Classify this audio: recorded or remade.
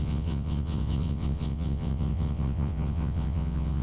remade